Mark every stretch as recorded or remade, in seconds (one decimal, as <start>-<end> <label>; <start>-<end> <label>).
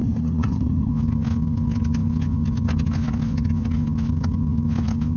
0.0-0.9 remade; 0.9-5.2 recorded